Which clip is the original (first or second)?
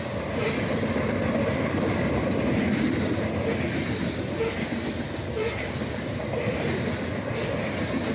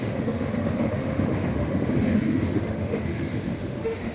first